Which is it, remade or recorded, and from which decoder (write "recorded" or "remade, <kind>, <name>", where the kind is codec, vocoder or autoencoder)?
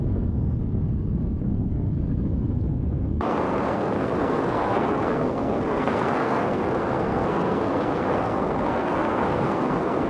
remade, codec, SNAC